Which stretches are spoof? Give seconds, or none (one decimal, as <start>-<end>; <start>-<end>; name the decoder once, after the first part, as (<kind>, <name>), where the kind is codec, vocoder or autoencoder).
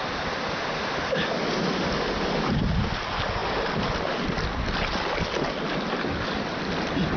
none